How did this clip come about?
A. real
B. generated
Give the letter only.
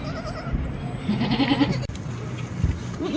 A